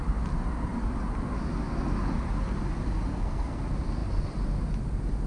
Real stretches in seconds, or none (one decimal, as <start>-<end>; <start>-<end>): 0.0-3.1; 3.6-5.3